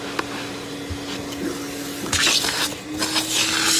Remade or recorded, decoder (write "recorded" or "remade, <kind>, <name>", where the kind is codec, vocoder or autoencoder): recorded